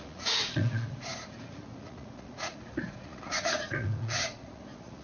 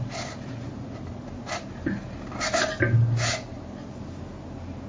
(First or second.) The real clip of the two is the second